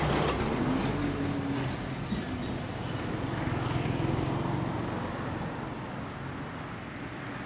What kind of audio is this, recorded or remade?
recorded